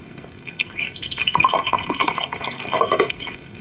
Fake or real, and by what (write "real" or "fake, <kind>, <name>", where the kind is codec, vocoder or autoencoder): fake, codec, SNAC